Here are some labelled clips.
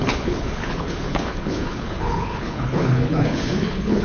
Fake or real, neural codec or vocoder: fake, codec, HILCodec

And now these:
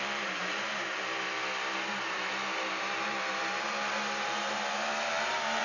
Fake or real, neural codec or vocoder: fake, vocoder, BigVGAN v2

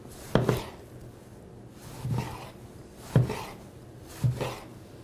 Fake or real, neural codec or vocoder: real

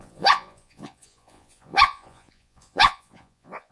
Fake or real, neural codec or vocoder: fake, vocoder, Vocos